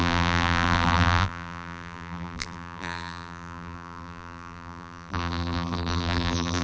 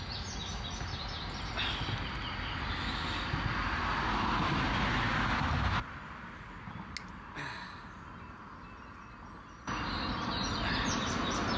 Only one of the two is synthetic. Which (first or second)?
first